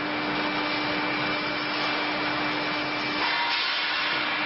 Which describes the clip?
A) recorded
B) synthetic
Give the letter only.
A